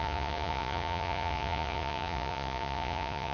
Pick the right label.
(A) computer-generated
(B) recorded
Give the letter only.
A